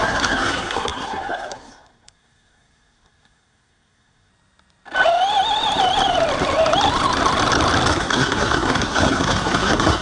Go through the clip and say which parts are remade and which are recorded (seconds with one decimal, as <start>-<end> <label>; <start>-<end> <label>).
0.0-4.3 remade; 4.3-7.9 recorded; 7.9-10.0 remade